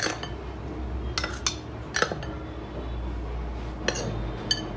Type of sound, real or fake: real